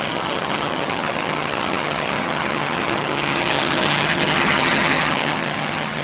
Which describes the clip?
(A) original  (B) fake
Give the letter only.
B